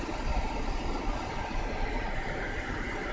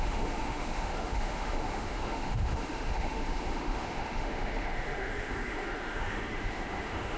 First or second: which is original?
first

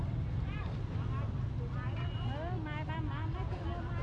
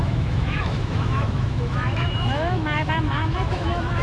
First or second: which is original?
first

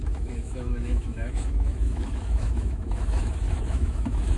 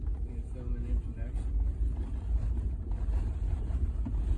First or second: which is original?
second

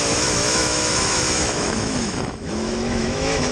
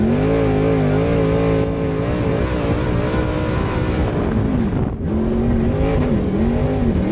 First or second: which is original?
second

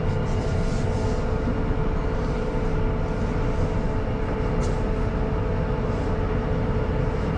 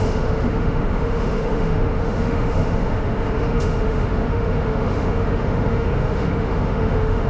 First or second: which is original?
first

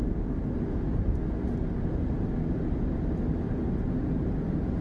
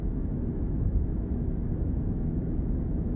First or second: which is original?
first